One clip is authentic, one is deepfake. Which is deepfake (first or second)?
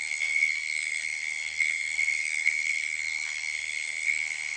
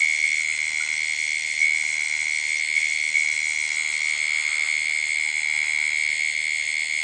first